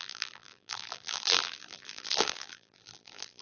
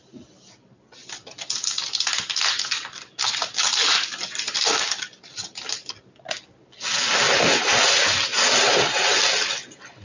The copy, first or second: first